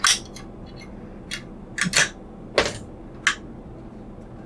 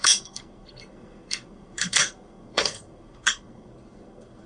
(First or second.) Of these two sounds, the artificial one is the second